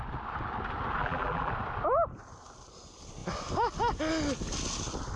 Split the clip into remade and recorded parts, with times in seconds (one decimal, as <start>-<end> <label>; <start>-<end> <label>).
0.0-1.0 recorded; 1.0-1.5 remade; 1.5-5.2 recorded